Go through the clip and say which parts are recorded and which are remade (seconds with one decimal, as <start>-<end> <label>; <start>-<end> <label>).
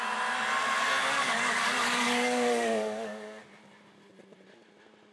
0.0-1.0 recorded; 1.0-3.4 remade; 3.4-5.1 recorded